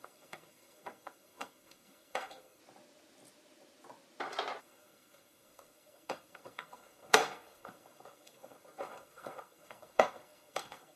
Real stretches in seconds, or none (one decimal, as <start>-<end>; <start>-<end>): 2.6-4.6